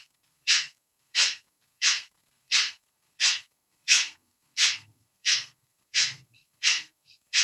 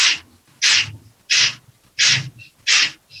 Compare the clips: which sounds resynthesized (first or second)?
first